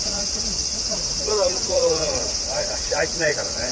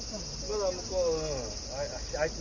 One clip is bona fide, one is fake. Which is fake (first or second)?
first